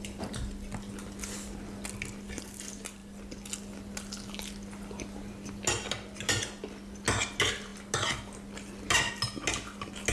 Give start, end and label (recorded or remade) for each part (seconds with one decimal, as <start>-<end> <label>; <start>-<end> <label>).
0.0-10.1 recorded